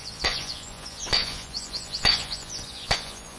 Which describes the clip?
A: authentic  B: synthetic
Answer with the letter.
B